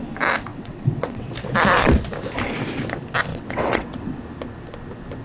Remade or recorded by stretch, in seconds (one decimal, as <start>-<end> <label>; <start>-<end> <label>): 0.0-0.5 recorded; 0.5-1.3 remade; 1.3-3.3 recorded; 3.3-4.2 remade; 4.2-5.2 recorded